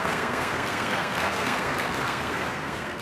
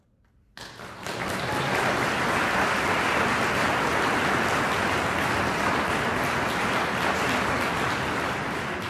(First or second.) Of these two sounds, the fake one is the first